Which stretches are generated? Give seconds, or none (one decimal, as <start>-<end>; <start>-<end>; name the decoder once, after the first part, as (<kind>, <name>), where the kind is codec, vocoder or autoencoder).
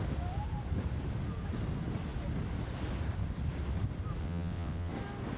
4.2-4.9 (vocoder, WaveNeXt)